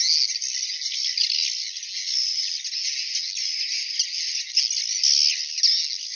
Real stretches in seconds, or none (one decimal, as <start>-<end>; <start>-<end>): 0.0-6.2